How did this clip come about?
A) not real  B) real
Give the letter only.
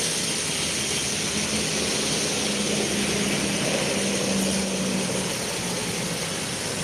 B